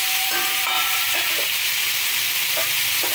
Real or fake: fake